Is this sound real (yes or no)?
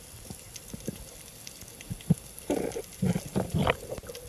yes